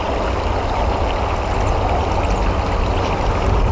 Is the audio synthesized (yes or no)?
no